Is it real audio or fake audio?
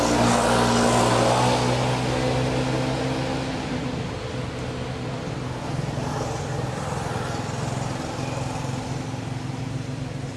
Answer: real